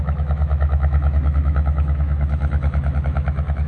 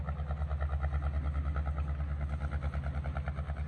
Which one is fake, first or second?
first